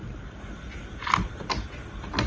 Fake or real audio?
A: real